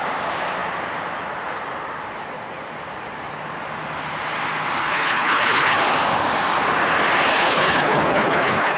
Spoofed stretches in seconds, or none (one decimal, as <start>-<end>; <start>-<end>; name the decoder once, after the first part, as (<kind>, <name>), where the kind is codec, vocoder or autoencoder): 4.8-5.8 (codec, HILCodec); 7.3-8.8